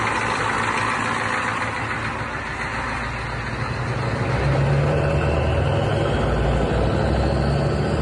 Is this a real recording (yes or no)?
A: yes